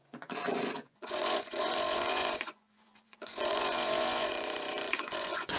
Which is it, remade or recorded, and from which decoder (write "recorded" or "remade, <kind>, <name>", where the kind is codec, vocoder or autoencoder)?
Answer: remade, vocoder, Vocos